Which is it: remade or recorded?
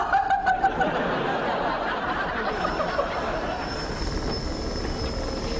recorded